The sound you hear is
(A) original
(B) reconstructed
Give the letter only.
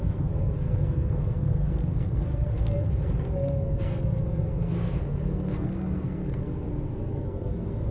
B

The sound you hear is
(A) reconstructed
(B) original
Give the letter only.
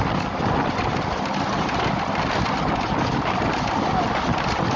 B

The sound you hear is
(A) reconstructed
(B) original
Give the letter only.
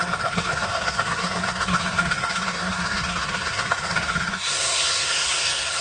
A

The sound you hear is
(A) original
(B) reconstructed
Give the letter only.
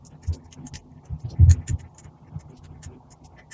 A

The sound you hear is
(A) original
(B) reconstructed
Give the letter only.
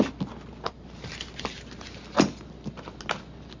A